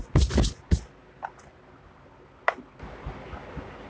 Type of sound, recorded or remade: recorded